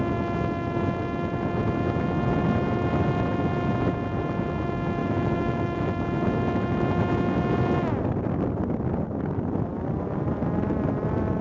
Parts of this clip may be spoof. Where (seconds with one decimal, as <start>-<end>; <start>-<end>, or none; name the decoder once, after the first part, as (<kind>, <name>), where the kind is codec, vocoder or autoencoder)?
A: 5.0-5.9 (autoencoder, DAC-VAE)